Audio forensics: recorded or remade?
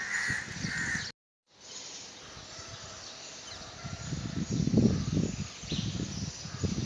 recorded